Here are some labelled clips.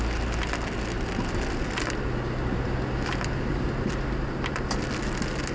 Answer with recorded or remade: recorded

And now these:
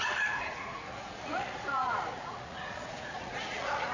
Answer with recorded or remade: remade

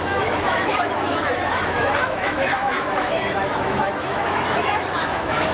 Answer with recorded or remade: remade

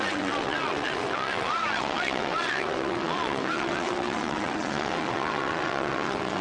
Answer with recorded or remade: remade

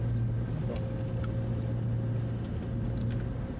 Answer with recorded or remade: recorded